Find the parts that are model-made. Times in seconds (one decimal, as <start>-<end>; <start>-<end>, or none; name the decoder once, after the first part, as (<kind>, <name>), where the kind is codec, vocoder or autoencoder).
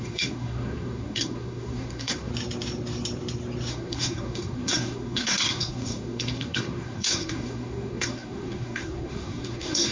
0.0-2.3 (codec, SNAC); 3.7-9.9